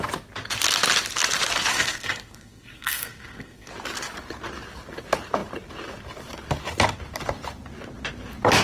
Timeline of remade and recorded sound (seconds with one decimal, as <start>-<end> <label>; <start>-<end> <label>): 0.0-1.7 recorded; 1.7-3.7 remade; 3.7-8.6 recorded